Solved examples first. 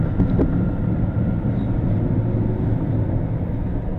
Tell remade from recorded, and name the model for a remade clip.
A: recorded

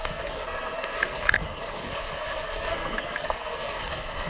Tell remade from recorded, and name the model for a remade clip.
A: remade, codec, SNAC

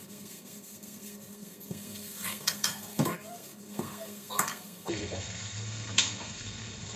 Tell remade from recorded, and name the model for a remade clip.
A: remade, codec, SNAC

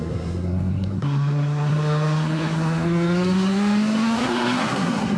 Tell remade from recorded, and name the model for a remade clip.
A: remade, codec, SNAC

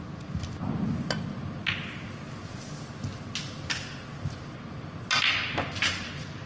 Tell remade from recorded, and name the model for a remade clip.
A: recorded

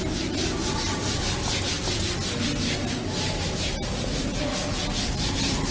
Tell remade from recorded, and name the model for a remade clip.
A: recorded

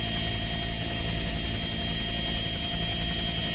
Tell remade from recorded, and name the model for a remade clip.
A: recorded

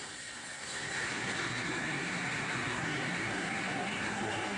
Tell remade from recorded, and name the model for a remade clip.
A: remade, codec, SNAC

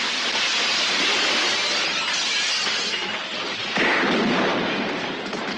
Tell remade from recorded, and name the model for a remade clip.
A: recorded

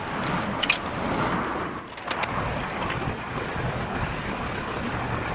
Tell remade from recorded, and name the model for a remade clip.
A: recorded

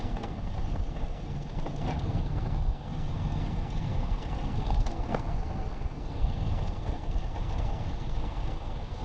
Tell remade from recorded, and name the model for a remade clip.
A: remade, codec, SNAC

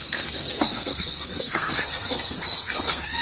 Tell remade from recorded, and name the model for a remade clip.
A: remade, codec, SNAC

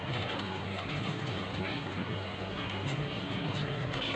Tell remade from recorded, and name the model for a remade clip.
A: remade, codec, SNAC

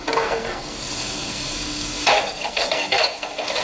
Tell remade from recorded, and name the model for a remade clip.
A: remade, codec, SNAC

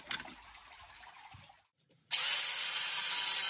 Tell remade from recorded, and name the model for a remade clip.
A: recorded